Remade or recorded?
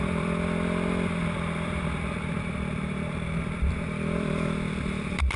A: remade